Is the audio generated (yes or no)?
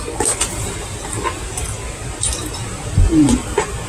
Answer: no